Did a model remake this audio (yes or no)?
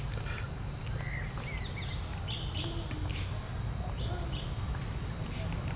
no